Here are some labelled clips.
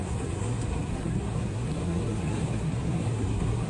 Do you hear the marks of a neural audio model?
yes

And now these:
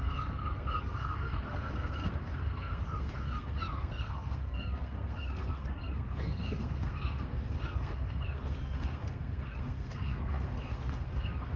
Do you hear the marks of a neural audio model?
yes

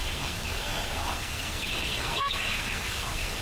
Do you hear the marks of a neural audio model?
yes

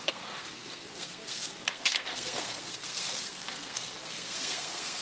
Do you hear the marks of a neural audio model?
yes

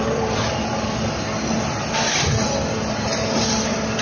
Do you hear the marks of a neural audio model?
no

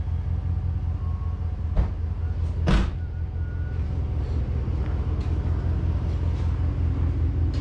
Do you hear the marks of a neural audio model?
no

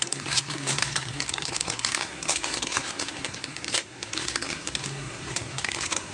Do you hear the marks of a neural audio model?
yes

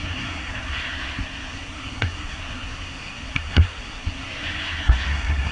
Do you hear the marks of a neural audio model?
yes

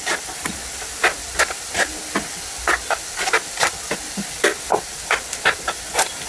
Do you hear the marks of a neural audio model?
no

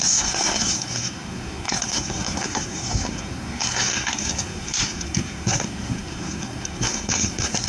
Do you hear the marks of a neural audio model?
yes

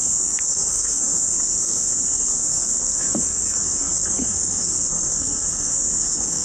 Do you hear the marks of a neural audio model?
yes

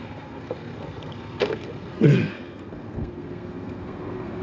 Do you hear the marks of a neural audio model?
yes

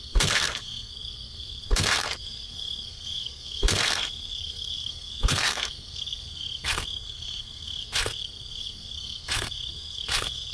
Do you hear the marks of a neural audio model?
yes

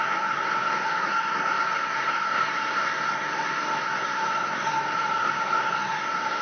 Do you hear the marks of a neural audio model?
yes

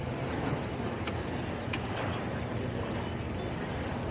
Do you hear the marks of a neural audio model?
no